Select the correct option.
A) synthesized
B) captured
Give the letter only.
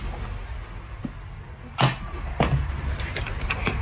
B